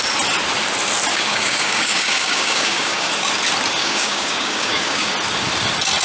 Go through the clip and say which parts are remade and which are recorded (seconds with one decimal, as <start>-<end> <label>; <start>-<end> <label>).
0.0-1.1 recorded; 1.1-3.1 remade; 3.1-3.8 recorded; 3.8-5.1 remade; 5.1-6.0 recorded